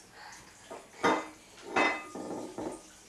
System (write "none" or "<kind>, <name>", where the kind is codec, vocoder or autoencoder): none